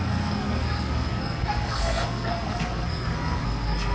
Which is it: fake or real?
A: fake